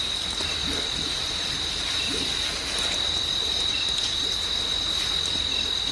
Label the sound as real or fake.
real